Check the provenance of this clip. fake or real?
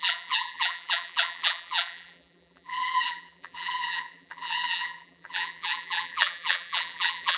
fake